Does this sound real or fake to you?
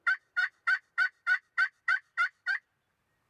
fake